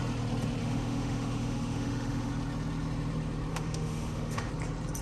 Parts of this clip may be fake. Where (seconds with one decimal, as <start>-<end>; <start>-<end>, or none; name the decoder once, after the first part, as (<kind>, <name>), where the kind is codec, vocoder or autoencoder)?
0.6-2.3 (autoencoder, DAC-VAE); 3.5-4.5